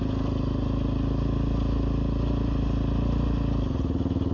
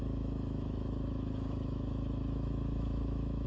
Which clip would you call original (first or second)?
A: first